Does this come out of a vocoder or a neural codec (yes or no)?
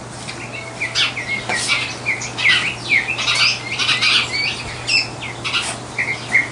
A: no